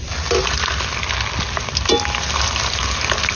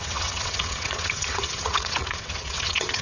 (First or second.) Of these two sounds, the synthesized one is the second